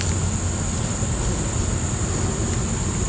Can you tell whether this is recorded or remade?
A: recorded